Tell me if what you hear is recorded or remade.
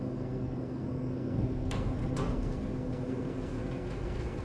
remade